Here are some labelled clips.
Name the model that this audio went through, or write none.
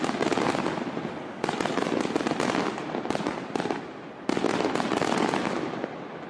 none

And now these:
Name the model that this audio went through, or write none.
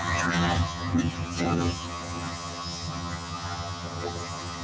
vocoder, HiFi-GAN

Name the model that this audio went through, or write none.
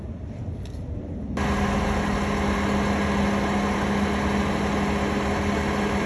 none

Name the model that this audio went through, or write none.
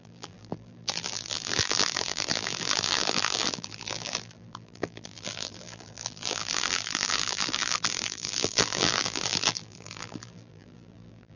vocoder, BigVGAN v2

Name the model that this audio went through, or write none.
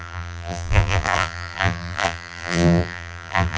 vocoder, BigVGAN v2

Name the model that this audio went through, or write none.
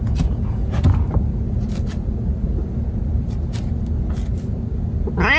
none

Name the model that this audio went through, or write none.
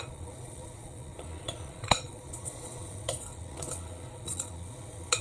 vocoder, Vocos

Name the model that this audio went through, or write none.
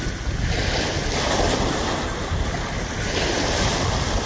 none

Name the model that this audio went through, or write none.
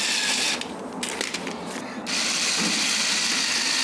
none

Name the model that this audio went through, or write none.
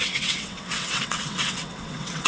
vocoder, WaveNeXt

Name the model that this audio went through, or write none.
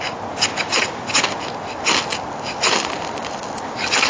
none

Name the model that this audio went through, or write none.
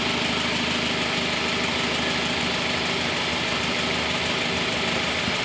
none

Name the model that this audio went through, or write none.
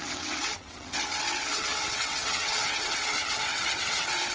vocoder, WaveNeXt